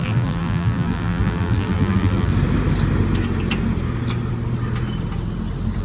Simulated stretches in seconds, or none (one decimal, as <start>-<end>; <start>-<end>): 0.0-2.3